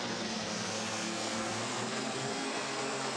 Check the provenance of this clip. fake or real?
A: fake